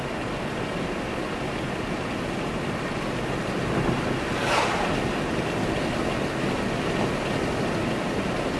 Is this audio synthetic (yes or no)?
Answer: no